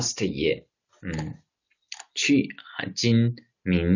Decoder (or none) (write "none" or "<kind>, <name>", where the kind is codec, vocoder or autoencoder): none